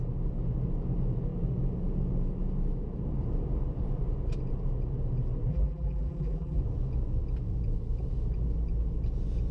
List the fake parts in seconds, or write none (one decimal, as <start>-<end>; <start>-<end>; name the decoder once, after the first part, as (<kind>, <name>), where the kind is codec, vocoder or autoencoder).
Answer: 5.5-6.6 (vocoder, BigVGAN v2)